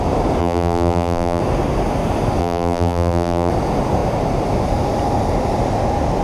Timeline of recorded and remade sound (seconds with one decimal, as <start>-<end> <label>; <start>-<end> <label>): 0.0-0.4 recorded; 0.4-1.4 remade; 1.4-2.4 recorded; 2.4-3.5 remade; 3.5-6.2 recorded